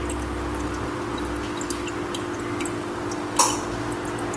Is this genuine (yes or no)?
yes